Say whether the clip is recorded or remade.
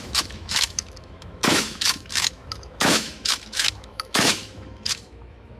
remade